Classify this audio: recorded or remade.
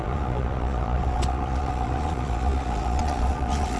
remade